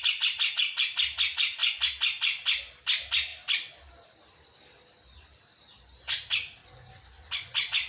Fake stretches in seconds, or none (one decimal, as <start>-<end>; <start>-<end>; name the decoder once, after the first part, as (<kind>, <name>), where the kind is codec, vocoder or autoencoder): 0.0-1.6 (vocoder, BigVGAN v2); 2.2-6.6